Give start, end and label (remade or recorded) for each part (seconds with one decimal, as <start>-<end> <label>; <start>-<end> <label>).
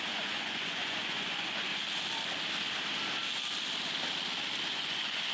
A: 0.0-1.7 remade; 1.7-4.7 recorded; 4.7-5.3 remade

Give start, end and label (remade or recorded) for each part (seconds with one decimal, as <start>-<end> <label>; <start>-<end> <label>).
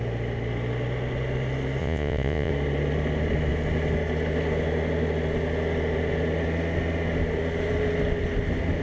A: 0.0-1.8 recorded; 1.8-2.5 remade; 2.5-8.8 recorded